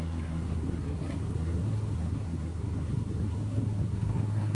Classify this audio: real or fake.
fake